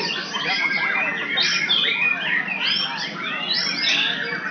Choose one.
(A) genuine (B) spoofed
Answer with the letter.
A